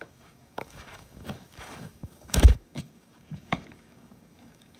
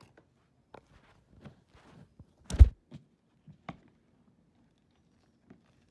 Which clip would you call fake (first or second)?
first